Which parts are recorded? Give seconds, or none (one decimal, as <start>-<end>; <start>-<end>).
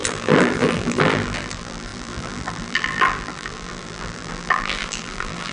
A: none